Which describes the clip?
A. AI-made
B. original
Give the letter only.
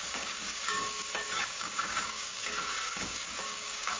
A